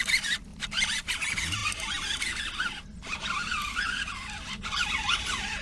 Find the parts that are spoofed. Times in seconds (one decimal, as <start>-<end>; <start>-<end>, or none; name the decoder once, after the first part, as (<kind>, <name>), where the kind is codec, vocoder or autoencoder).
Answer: 0.5-1.1 (vocoder, BigVGAN v2)